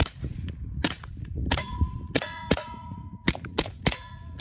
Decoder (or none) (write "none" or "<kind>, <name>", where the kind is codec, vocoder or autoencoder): vocoder, Vocos